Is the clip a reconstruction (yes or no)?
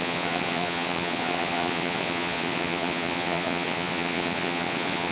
yes